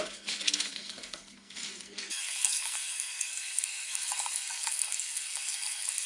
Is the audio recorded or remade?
remade